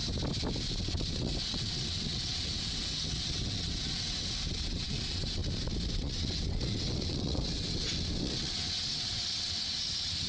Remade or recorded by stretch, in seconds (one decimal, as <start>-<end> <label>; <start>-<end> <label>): 0.0-0.8 recorded; 0.8-5.4 remade; 5.4-5.9 recorded; 5.9-10.3 remade